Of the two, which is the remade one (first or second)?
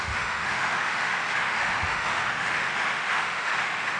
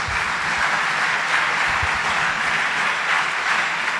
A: first